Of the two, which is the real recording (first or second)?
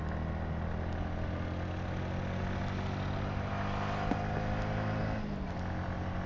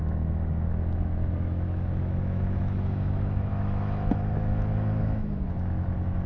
first